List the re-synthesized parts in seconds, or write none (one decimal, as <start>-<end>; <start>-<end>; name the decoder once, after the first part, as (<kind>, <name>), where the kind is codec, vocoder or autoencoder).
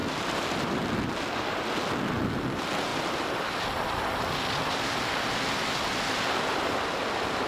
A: 0.0-1.0 (vocoder, BigVGAN v2); 2.9-7.5